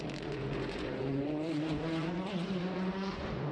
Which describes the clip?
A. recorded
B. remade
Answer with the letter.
B